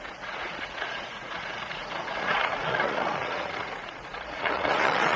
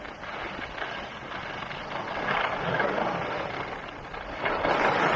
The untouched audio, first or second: second